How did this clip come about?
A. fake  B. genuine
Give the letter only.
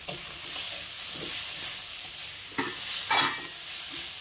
B